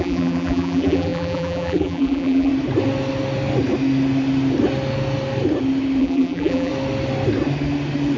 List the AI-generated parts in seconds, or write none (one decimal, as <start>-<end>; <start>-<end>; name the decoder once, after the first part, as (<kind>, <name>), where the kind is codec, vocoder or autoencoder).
0.0-2.5 (vocoder, BigVGAN v2); 6.0-6.7

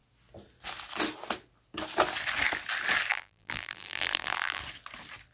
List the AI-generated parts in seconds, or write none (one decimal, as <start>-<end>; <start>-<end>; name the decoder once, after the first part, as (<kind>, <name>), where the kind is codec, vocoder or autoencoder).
3.1-4.6 (vocoder, BigVGAN v2)